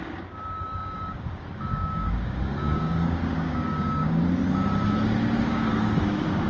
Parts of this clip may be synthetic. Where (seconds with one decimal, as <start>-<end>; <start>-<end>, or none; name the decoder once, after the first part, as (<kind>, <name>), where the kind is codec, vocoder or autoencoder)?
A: 0.0-4.4 (codec, DAC); 5.4-6.5